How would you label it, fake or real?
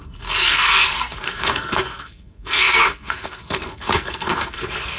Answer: fake